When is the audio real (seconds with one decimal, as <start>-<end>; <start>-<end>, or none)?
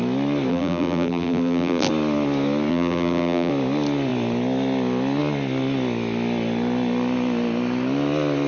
0.0-0.5; 1.9-2.7; 3.5-8.5